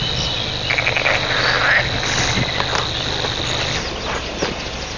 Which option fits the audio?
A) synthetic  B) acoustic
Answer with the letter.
B